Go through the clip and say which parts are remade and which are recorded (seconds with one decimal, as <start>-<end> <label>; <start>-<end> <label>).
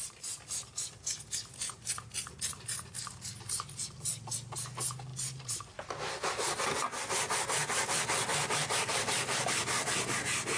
0.0-8.3 recorded; 8.3-10.2 remade; 10.2-10.6 recorded